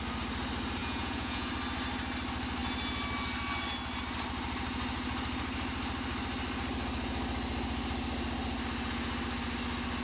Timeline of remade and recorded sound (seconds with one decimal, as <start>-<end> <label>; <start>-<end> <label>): 0.0-0.8 recorded; 0.8-1.5 remade; 1.5-10.0 recorded